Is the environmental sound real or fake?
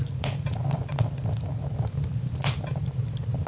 real